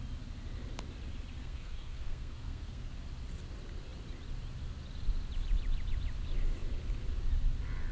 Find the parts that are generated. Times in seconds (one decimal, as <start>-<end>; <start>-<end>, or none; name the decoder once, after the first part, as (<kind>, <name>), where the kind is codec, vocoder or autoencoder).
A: 1.4-2.9 (codec, SNAC)